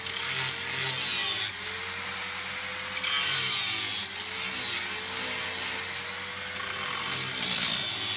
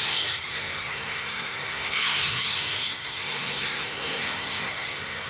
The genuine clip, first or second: first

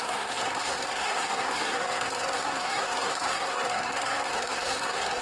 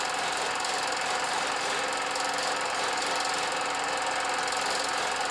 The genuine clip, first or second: second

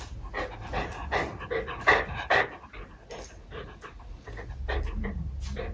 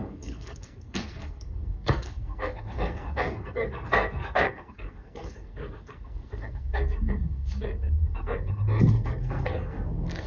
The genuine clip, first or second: first